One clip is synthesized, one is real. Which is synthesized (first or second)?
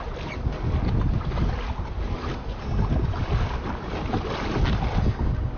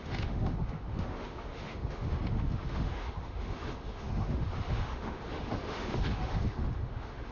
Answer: second